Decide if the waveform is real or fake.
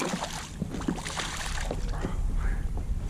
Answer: real